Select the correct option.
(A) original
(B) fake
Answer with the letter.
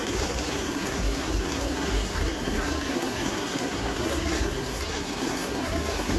B